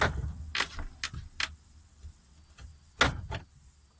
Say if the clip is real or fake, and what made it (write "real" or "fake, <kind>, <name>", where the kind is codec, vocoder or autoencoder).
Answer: real